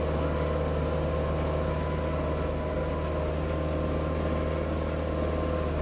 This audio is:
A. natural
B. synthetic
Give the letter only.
A